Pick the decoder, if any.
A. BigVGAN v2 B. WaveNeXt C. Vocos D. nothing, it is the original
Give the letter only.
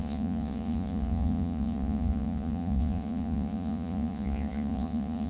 C